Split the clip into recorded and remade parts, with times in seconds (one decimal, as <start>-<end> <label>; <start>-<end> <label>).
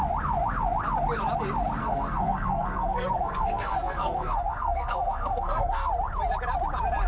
0.0-1.8 recorded; 1.8-5.9 remade; 5.9-7.1 recorded